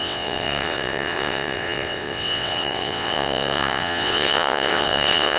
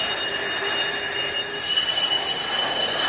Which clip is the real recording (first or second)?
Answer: second